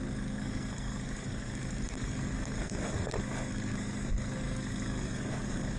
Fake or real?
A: fake